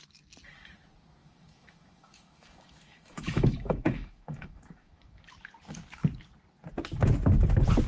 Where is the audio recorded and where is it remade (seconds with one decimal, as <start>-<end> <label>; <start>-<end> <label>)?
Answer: 0.0-1.2 recorded; 1.2-5.2 remade; 5.2-7.9 recorded